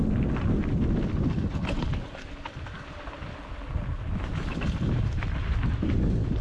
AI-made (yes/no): no